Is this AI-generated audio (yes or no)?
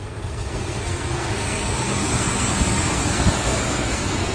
yes